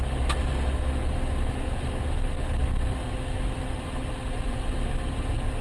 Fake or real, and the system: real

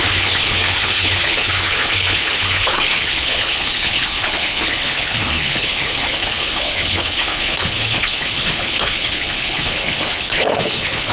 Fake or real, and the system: fake, codec, HILCodec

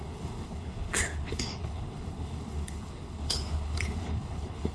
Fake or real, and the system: fake, codec, HILCodec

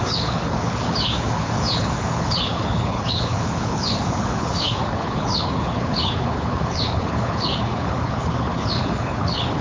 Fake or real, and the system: fake, codec, HILCodec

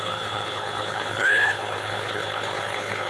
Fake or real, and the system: fake, codec, HILCodec